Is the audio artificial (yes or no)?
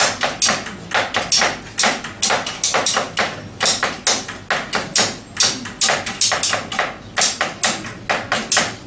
no